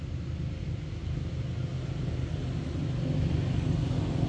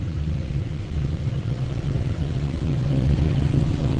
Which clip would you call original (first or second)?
first